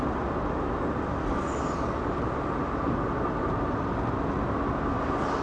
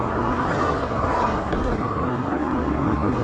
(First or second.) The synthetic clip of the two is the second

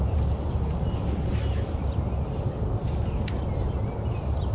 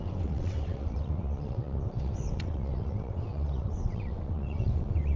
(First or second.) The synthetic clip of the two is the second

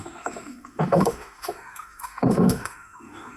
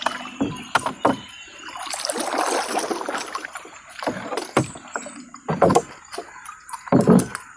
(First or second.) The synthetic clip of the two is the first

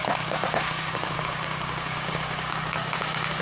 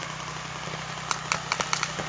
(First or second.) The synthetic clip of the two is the first